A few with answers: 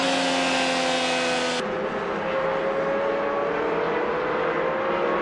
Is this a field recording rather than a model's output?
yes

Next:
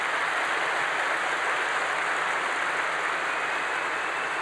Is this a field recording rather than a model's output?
yes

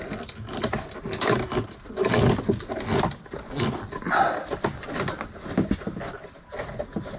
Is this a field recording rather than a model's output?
yes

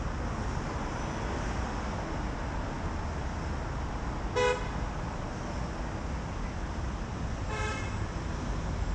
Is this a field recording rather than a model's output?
yes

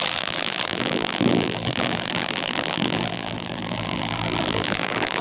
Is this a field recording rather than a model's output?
no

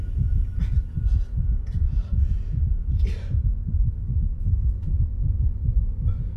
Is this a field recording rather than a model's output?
yes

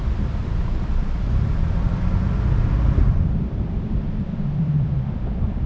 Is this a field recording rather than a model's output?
no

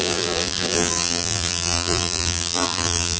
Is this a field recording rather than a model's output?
no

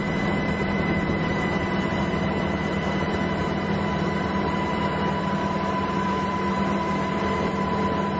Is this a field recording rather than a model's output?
no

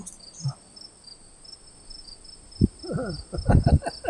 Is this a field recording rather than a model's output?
yes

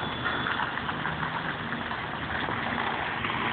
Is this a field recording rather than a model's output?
yes